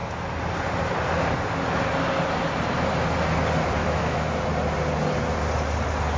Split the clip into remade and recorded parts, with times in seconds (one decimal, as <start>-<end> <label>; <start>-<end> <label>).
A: 0.0-3.8 recorded; 3.8-4.3 remade; 4.3-6.2 recorded